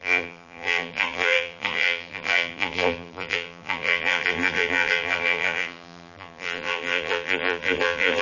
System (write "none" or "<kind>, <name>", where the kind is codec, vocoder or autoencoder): vocoder, BigVGAN v2